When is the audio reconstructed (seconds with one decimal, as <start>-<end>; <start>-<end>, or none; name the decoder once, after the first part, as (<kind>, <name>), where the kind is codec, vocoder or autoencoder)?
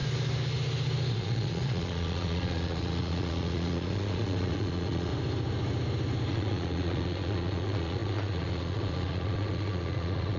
1.1-5.1 (vocoder, Vocos); 6.3-10.4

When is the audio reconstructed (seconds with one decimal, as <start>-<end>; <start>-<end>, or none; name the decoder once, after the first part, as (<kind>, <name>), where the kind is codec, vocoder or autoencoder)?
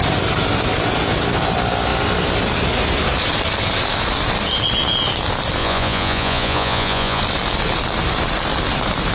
5.6-7.2 (vocoder, Vocos)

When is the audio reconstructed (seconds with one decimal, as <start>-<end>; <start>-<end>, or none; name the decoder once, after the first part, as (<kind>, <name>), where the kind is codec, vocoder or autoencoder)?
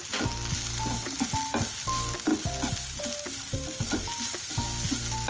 none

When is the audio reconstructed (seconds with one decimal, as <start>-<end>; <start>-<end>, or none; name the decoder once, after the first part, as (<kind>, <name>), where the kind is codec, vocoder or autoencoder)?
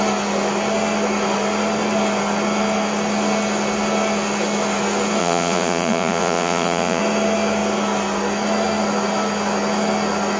5.2-7.0 (vocoder, Vocos)